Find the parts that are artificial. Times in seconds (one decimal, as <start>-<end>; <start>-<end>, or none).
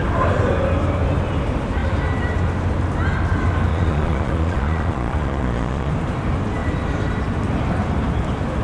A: 3.7-5.9